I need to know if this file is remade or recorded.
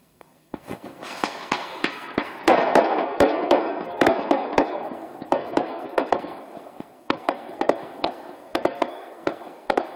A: remade